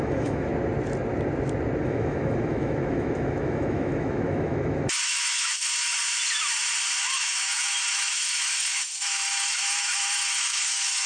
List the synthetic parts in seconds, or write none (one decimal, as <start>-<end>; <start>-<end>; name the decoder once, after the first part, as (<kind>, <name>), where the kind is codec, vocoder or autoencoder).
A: 0.0-0.5 (autoencoder, DAC-VAE); 1.8-6.0; 7.0-11.1